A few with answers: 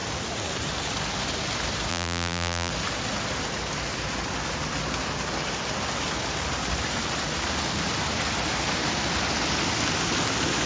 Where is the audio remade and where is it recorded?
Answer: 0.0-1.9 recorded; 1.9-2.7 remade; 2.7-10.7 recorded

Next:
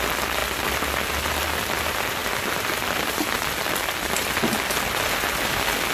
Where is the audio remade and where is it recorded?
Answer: 0.0-5.9 recorded

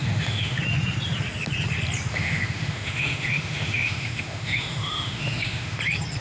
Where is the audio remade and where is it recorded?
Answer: 0.0-0.6 remade; 0.6-2.1 recorded; 2.1-5.8 remade; 5.8-6.2 recorded